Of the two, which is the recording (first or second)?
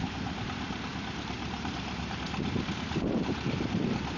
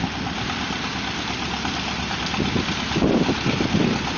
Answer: second